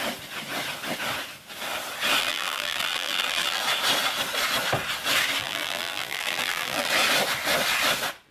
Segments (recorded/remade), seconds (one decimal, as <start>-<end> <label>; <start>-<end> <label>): 0.0-2.2 recorded; 2.2-3.6 remade; 3.6-5.4 recorded; 5.4-6.9 remade; 6.9-8.3 recorded